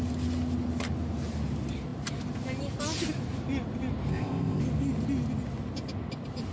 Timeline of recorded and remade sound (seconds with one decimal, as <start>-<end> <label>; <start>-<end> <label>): 0.0-4.1 recorded; 4.1-4.6 remade; 4.6-6.5 recorded